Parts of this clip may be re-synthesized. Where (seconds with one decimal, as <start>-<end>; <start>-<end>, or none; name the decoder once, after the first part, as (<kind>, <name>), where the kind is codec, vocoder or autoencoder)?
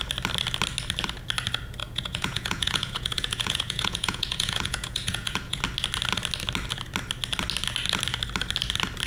1.8-5.6 (vocoder, Vocos)